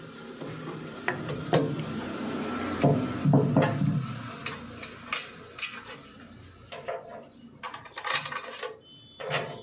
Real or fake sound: real